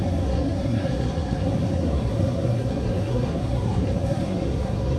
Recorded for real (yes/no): no